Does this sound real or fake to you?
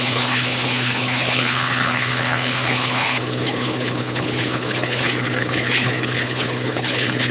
fake